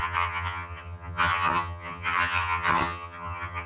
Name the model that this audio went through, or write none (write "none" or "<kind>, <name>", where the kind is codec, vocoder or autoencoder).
vocoder, HiFi-GAN